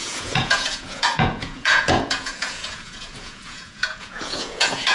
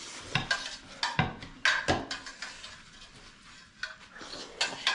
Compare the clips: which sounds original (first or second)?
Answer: second